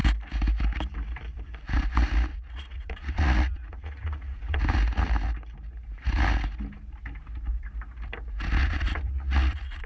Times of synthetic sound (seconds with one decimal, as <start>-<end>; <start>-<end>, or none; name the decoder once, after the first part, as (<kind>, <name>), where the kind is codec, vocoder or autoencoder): 2.3-4.6 (vocoder, Vocos); 8.6-9.9